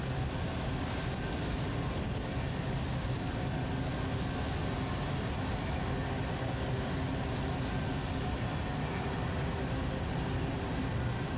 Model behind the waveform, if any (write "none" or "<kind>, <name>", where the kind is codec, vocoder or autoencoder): none